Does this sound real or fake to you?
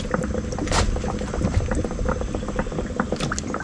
real